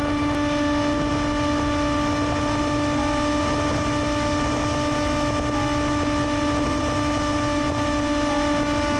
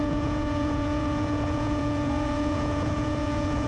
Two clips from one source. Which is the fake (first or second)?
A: second